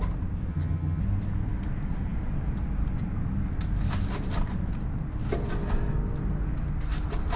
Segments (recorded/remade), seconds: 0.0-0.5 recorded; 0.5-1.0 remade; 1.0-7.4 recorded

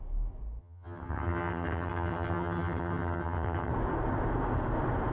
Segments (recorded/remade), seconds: 0.0-0.6 recorded; 0.6-3.7 remade; 3.7-5.1 recorded

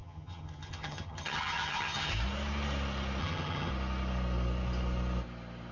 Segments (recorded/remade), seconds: 0.0-2.1 remade; 2.1-3.2 recorded; 3.2-3.7 remade; 3.7-5.7 recorded

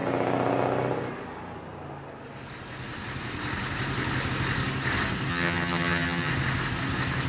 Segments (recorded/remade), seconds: 0.0-5.3 recorded; 5.3-6.3 remade; 6.3-7.3 recorded

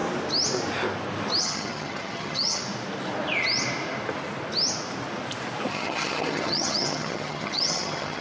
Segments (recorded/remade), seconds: 0.0-1.4 recorded; 1.4-2.6 remade; 2.6-5.7 recorded; 5.7-8.2 remade

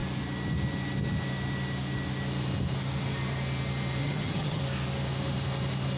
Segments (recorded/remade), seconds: 0.0-4.0 recorded; 4.0-4.6 remade; 4.6-6.0 recorded

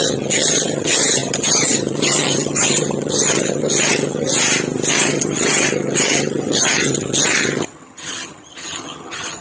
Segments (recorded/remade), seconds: 0.0-4.3 remade; 4.3-4.9 recorded; 4.9-9.4 remade

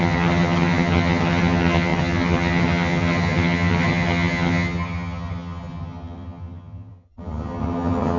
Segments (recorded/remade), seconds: 0.0-8.2 remade